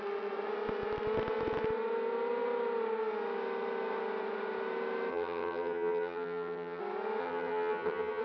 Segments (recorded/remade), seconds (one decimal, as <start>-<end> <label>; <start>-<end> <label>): 0.0-5.1 recorded; 5.1-6.8 remade; 6.8-7.2 recorded; 7.2-8.2 remade

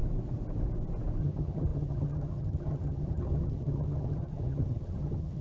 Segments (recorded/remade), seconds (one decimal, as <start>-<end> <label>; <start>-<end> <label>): 0.0-1.2 recorded; 1.2-5.4 remade

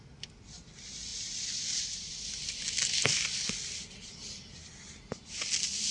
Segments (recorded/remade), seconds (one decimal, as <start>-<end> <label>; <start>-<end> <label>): 0.0-5.9 recorded

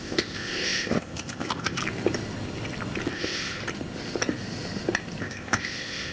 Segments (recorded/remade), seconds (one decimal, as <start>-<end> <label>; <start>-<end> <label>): 0.0-1.8 remade; 1.8-3.1 recorded; 3.1-3.6 remade; 3.6-5.2 recorded; 5.2-6.1 remade

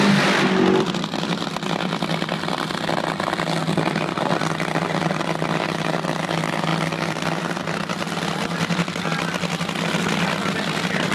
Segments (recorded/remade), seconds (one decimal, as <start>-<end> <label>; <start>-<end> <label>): 0.0-11.1 recorded